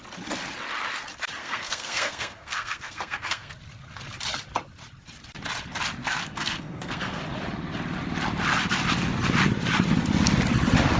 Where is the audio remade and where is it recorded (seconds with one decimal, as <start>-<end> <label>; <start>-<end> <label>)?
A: 0.0-1.4 recorded; 1.4-3.5 remade; 3.5-6.0 recorded; 6.0-7.2 remade; 7.2-11.0 recorded